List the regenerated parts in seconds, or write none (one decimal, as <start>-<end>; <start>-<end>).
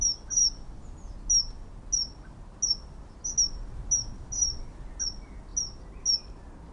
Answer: none